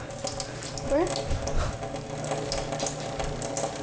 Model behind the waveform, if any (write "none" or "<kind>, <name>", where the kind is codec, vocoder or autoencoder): none